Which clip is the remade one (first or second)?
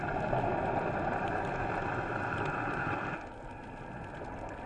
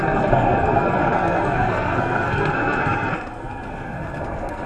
second